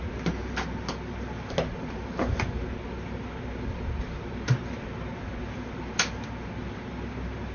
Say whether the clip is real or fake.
real